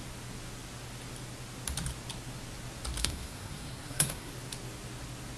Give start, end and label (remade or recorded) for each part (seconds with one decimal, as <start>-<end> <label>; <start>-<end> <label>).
0.0-3.0 recorded; 3.0-4.3 remade; 4.3-5.4 recorded